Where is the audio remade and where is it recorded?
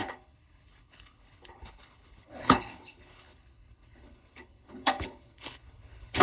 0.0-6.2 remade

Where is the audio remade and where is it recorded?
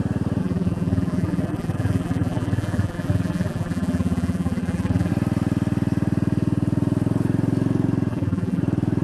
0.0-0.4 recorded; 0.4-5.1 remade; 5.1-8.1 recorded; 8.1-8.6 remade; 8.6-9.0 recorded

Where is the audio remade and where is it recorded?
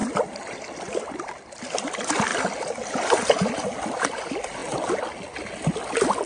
0.0-1.6 remade; 1.6-6.3 recorded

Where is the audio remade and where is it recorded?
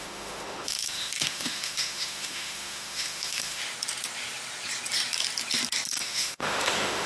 0.0-3.6 remade; 3.6-5.9 recorded; 5.9-7.1 remade